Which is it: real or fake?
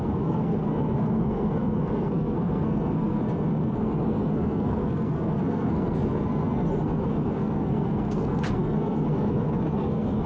fake